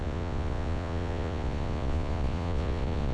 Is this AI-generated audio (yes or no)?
yes